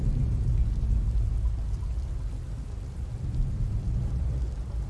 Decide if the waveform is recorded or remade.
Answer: recorded